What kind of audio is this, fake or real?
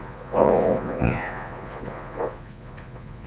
fake